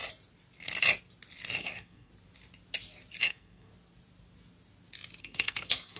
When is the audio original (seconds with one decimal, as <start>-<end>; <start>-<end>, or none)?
0.0-1.6; 2.1-3.2; 3.7-5.2